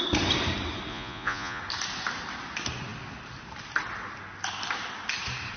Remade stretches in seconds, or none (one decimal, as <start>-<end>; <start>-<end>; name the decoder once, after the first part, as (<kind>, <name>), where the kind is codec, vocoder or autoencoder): 0.9-1.6 (vocoder, Vocos)